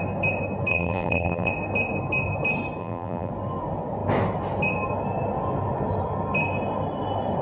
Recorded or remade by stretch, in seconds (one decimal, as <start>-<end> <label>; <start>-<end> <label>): 0.0-0.7 recorded; 0.7-1.5 remade; 1.5-2.8 recorded; 2.8-3.3 remade; 3.3-7.4 recorded